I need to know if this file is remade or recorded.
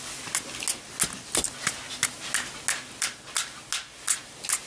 recorded